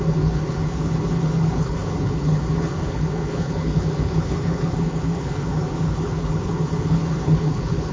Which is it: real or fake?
fake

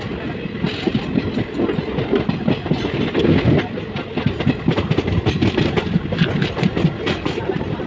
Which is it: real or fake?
real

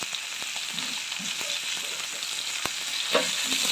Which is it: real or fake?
real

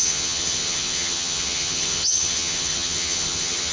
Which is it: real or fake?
fake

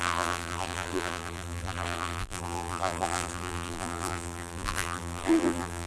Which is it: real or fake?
fake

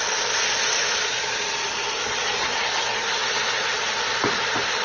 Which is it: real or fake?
real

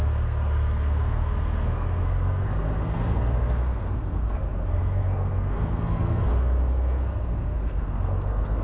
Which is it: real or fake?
fake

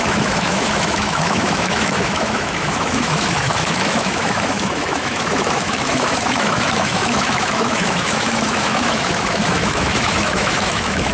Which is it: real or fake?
fake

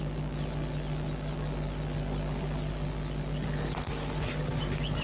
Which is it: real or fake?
real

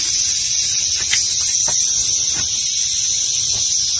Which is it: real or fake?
real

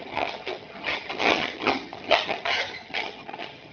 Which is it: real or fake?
fake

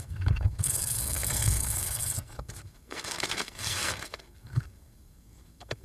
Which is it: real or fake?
fake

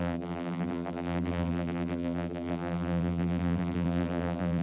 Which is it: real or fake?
fake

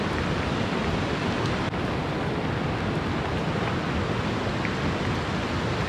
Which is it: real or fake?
real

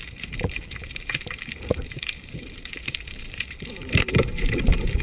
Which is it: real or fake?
fake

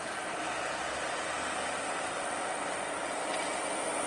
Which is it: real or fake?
real